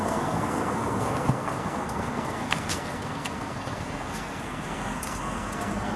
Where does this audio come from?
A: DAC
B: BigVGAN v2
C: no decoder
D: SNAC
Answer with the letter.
D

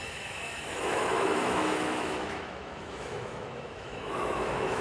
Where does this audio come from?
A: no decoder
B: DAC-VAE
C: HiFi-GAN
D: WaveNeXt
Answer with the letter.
B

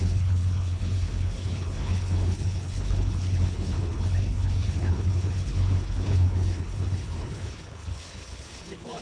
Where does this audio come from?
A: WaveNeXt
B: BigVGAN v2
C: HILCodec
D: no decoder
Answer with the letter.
C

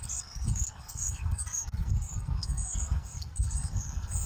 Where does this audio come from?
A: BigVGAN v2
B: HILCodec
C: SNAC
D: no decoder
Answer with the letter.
C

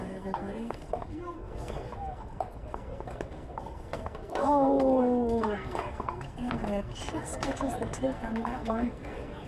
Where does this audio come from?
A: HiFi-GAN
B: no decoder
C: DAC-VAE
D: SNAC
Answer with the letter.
D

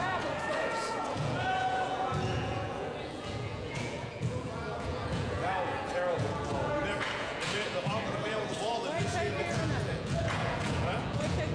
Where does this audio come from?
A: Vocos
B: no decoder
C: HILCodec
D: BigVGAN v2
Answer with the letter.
A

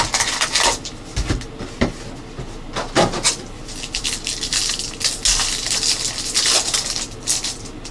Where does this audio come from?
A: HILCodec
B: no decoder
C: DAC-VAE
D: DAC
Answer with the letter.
B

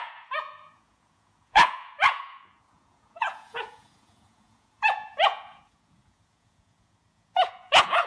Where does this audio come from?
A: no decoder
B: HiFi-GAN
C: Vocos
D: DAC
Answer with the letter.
C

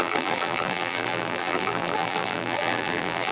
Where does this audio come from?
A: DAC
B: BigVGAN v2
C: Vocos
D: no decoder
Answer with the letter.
B